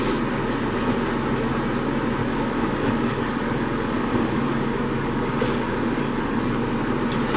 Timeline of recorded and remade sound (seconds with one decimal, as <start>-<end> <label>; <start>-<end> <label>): 0.0-2.2 recorded; 2.2-6.6 remade; 6.6-7.4 recorded